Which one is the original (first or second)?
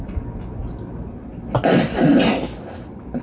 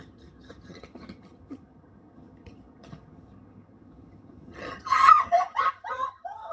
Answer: first